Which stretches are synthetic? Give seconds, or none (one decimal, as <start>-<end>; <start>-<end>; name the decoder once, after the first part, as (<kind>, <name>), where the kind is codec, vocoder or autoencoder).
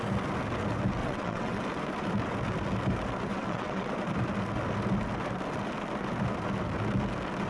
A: 1.0-1.6 (vocoder, WaveNeXt); 3.3-3.9